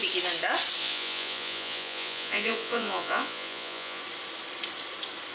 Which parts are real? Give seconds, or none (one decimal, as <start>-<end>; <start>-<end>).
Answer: 0.0-0.8; 4.0-5.3